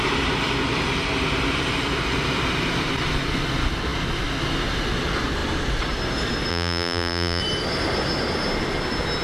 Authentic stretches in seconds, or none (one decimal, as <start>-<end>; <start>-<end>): 0.0-6.5; 7.4-9.2